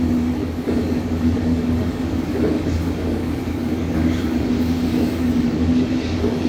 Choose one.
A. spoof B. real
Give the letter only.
A